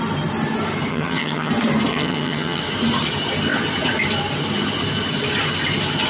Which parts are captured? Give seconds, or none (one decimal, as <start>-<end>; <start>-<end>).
0.0-0.9; 1.5-1.9; 2.6-6.1